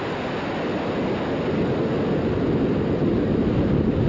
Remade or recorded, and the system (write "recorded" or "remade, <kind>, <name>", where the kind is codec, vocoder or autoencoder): recorded